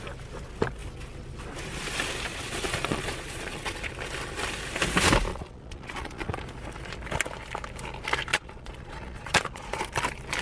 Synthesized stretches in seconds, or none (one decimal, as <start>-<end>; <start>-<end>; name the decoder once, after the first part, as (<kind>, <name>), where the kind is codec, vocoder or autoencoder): 2.3-3.9 (vocoder, Vocos); 5.3-6.4; 8.3-9.8